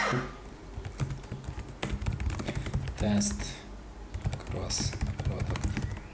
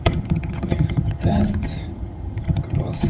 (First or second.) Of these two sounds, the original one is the first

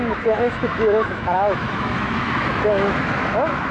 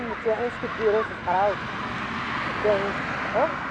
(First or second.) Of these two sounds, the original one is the second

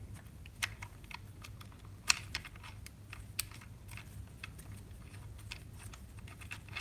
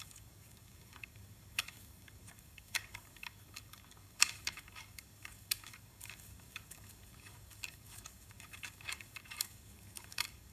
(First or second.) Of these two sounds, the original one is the first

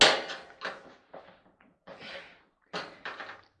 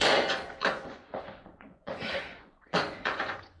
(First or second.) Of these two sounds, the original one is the first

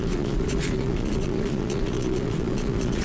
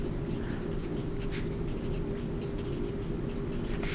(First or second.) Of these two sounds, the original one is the second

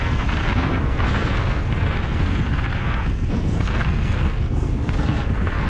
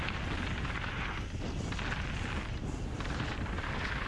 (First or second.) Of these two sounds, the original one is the second